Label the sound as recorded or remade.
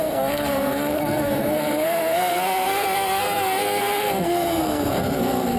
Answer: remade